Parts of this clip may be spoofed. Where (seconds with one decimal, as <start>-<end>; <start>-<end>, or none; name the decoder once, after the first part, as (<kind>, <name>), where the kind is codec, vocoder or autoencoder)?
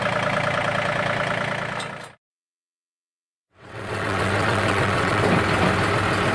2.3-5.2 (vocoder, WaveNeXt)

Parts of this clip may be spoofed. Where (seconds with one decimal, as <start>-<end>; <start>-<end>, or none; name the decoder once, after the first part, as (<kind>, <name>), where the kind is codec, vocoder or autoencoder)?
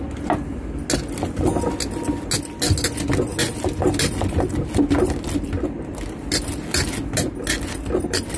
none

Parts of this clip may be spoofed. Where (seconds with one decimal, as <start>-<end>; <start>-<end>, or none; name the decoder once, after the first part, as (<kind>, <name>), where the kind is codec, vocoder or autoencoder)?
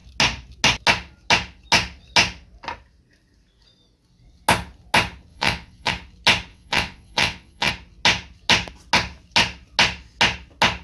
5.3-5.9 (vocoder, WaveNeXt); 6.5-7.7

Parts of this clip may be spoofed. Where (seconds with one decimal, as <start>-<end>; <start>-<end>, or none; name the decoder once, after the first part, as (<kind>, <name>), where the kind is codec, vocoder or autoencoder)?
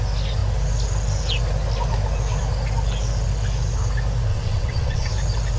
4.3-5.1 (vocoder, WaveNeXt)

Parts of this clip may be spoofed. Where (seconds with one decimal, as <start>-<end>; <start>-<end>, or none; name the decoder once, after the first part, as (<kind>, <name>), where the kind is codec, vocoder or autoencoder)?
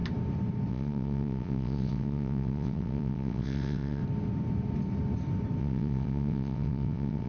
0.7-4.0 (vocoder, WaveNeXt); 5.6-7.3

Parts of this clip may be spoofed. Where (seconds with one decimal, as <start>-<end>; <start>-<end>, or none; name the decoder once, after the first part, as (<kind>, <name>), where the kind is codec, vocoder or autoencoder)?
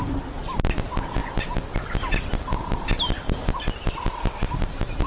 none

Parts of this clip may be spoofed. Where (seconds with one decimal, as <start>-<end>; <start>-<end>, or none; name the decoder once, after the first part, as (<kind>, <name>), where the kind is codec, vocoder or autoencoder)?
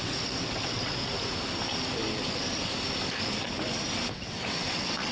0.0-1.0 (vocoder, WaveNeXt); 4.1-5.1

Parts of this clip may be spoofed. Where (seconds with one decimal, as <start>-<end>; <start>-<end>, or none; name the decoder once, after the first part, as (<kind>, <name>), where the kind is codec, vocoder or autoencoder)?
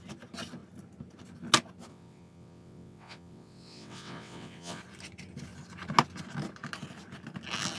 1.9-4.8 (vocoder, WaveNeXt)